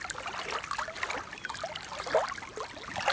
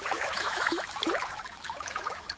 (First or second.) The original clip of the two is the first